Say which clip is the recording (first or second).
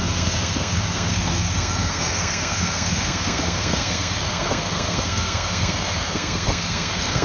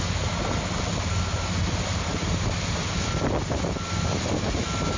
second